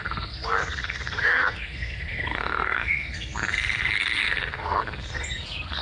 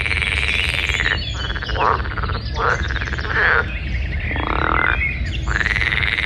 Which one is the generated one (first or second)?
first